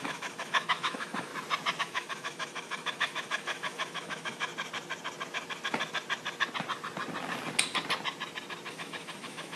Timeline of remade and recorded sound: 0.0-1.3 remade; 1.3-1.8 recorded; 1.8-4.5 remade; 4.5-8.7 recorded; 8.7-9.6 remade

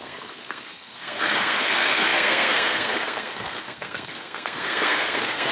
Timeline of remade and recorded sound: 0.0-5.5 remade

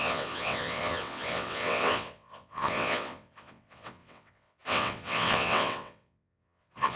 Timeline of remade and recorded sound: 0.0-7.0 remade

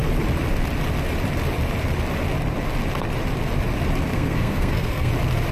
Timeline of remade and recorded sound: 0.0-4.1 recorded; 4.1-5.1 remade; 5.1-5.5 recorded

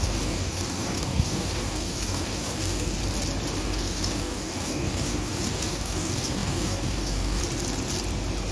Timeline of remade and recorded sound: 0.0-3.0 remade; 3.0-3.6 recorded; 3.6-7.4 remade; 7.4-8.5 recorded

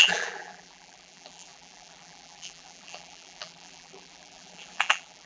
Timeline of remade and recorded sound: 0.0-5.3 remade

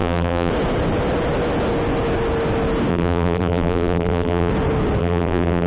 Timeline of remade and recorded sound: 0.0-0.5 remade; 0.5-2.9 recorded; 2.9-4.5 remade; 4.5-5.0 recorded; 5.0-5.7 remade

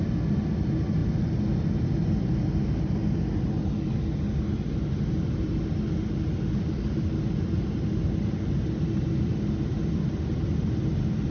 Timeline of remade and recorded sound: 0.0-11.3 recorded